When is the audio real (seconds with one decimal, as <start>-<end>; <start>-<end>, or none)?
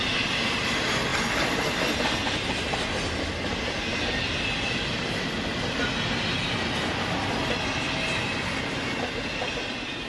0.0-10.1